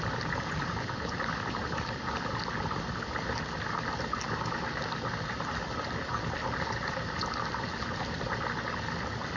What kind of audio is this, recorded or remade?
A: recorded